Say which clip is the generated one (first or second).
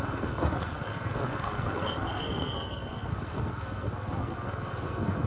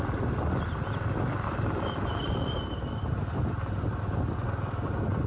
first